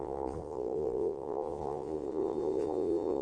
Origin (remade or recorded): remade